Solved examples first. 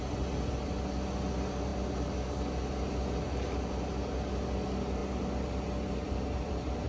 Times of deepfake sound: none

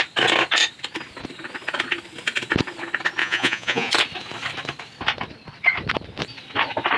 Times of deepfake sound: 3.2-3.9 (vocoder, Vocos)

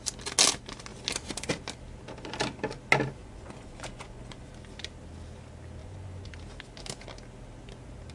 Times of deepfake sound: 3.2-4.5 (vocoder, Vocos); 5.8-6.3

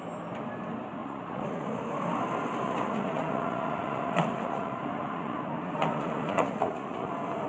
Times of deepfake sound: 1.0-1.8 (vocoder, Vocos); 2.6-7.1

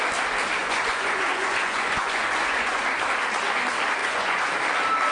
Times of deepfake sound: 0.6-2.8 (vocoder, Vocos); 4.0-4.5

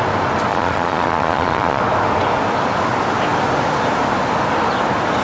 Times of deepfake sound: 0.5-1.8 (vocoder, Vocos)

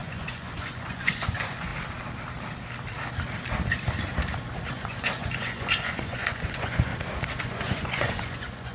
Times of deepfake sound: 0.0-1.7 (vocoder, Vocos); 4.7-6.9; 7.4-8.7

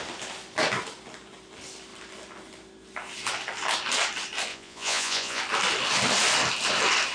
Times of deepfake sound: 4.5-5.4 (vocoder, Vocos)